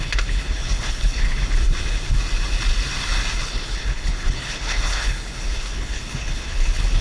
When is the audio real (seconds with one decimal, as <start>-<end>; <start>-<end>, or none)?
1.6-3.4